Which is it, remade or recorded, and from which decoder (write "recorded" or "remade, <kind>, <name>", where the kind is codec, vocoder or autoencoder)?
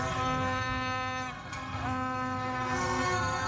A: remade, codec, SNAC